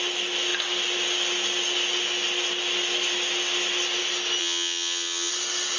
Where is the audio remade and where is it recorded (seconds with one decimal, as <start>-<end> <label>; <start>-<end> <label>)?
0.0-4.4 recorded; 4.4-5.3 remade; 5.3-5.8 recorded

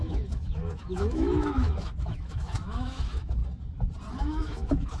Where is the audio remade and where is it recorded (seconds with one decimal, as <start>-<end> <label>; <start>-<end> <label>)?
0.0-3.4 remade; 3.4-4.1 recorded; 4.1-5.0 remade